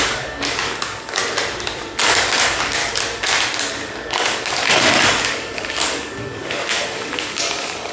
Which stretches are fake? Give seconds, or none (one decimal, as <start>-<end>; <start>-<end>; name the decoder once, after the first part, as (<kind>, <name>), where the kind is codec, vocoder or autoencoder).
0.0-1.2 (codec, DAC); 2.0-2.8; 3.7-7.9